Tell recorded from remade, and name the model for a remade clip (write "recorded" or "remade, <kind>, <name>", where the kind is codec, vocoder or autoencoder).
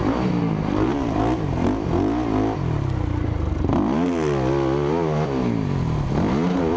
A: recorded